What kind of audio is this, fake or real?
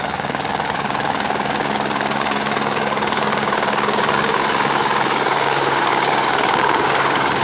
fake